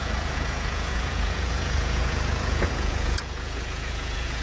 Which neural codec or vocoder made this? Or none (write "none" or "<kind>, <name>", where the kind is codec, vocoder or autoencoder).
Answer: vocoder, Vocos